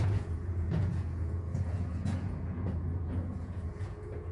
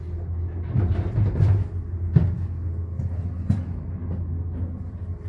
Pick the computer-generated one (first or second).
first